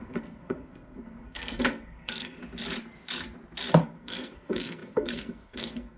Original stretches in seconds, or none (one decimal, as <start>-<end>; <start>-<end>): 2.4-3.8